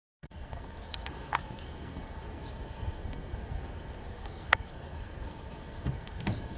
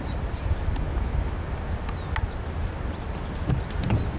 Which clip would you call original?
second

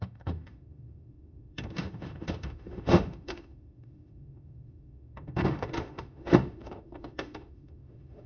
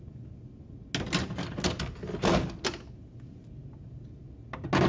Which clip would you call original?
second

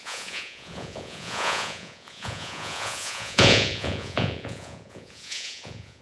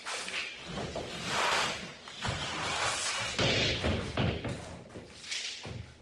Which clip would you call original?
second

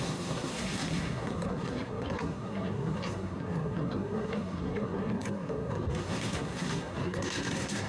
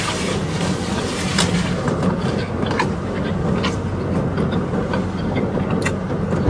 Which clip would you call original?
second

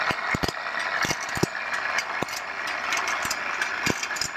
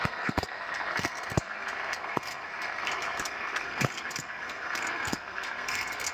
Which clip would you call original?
first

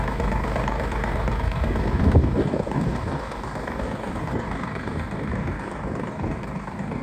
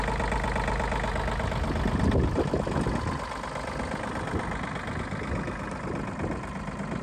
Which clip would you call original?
second